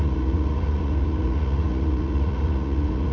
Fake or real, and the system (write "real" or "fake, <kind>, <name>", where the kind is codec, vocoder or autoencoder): fake, vocoder, Vocos